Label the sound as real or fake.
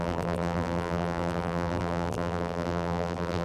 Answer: fake